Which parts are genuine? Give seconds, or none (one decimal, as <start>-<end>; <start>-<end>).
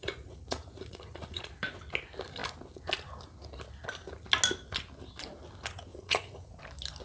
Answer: 1.8-5.9; 6.6-7.0